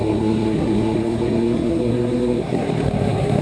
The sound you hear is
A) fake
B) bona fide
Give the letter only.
A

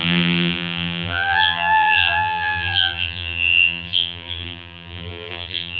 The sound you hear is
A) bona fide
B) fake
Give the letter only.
B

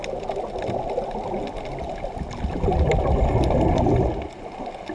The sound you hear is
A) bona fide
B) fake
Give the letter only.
A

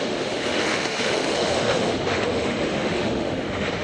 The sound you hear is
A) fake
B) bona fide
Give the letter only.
A